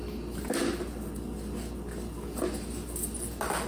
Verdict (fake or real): real